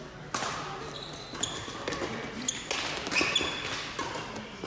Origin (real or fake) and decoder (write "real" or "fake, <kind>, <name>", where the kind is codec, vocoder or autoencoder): real